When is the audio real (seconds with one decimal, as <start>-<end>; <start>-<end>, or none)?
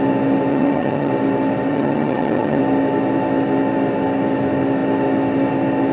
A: 0.0-0.5; 1.1-1.7; 2.6-5.9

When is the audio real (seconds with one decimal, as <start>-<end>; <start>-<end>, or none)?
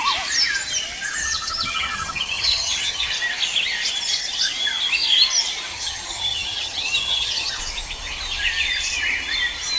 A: 0.0-1.2; 3.1-5.7; 7.6-9.8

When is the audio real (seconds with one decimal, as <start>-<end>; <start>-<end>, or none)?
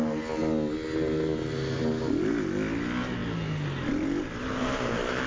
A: 0.0-5.3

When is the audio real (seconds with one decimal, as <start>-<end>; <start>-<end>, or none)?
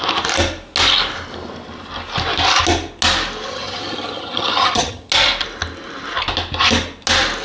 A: 0.0-3.5; 5.1-7.4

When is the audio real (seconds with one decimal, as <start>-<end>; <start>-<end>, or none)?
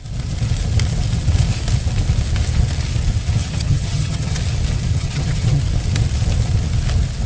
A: 0.0-3.4; 4.4-4.9; 5.6-7.3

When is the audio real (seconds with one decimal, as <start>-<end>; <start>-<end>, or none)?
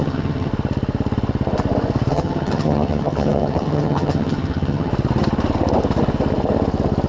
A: 0.5-2.1; 4.9-7.1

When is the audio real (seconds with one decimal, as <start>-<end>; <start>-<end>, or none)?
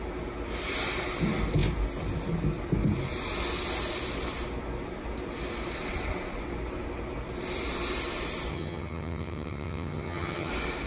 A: 0.0-8.5; 10.5-10.9